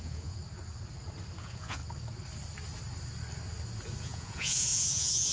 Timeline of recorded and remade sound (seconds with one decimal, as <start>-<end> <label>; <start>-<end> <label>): 0.0-0.4 remade; 0.4-1.4 recorded; 1.4-1.8 remade; 1.8-4.0 recorded; 4.0-5.3 remade